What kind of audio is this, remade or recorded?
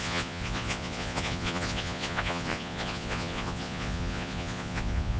remade